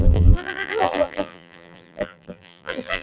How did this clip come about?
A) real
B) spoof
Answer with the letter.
B